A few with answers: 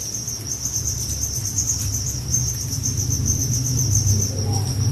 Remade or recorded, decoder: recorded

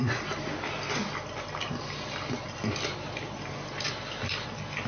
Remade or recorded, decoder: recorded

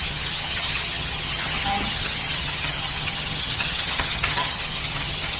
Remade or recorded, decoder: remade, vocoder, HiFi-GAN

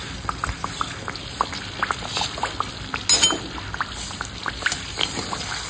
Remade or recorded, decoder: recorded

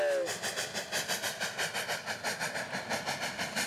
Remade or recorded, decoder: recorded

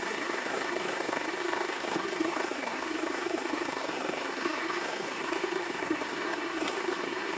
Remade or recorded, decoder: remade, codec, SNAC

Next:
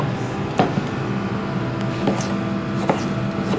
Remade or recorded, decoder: recorded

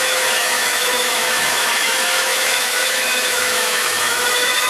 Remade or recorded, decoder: remade, autoencoder, DAC-VAE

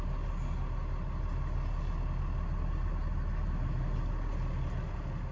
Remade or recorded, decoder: recorded